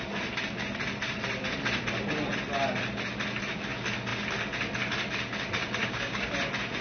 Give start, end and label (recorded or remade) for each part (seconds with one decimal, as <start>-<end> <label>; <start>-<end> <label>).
0.0-5.8 recorded; 5.8-6.3 remade; 6.3-6.8 recorded